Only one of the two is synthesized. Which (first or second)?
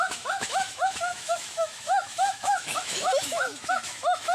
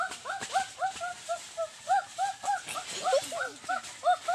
first